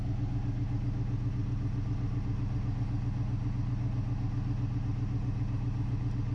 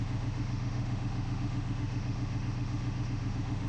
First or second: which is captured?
first